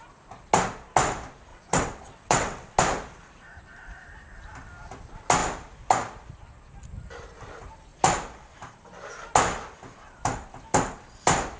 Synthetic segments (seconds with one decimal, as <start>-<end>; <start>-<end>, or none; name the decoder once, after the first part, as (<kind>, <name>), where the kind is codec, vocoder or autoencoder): 1.5-2.7 (vocoder, WaveNeXt)

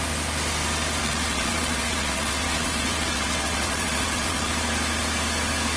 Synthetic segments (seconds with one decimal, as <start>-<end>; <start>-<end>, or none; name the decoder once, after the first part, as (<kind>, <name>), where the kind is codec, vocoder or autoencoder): 1.0-4.5 (vocoder, WaveNeXt)

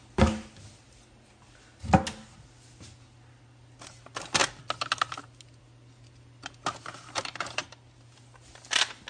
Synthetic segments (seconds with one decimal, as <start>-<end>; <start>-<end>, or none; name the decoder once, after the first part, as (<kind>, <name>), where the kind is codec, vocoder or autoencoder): none

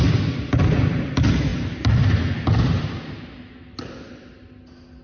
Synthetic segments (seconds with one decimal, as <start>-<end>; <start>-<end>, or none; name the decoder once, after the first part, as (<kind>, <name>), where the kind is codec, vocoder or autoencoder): none

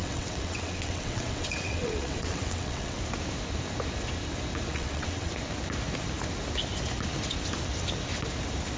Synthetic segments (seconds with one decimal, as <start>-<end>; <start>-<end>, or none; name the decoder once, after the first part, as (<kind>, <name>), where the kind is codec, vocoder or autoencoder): 0.0-3.0 (vocoder, WaveNeXt); 4.7-5.3

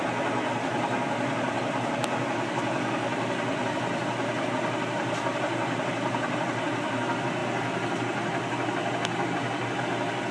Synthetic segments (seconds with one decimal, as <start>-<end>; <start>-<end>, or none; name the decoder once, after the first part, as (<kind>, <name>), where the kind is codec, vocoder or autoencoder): none

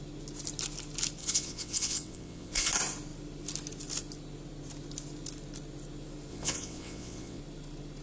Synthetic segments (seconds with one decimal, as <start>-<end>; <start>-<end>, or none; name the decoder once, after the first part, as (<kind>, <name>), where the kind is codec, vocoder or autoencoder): 1.2-2.7 (vocoder, WaveNeXt); 6.3-7.4

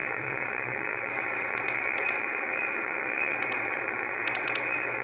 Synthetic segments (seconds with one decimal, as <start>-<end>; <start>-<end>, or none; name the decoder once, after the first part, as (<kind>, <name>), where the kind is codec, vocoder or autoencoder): 0.0-5.0 (vocoder, WaveNeXt)